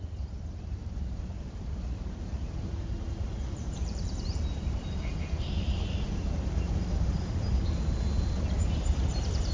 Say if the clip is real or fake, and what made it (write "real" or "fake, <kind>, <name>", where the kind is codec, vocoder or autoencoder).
fake, vocoder, BigVGAN v2